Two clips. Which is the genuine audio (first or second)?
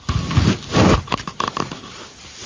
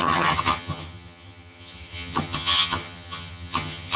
first